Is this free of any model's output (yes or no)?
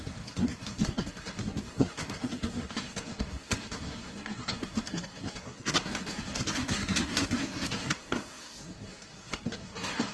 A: no